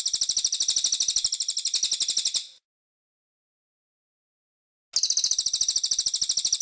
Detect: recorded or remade recorded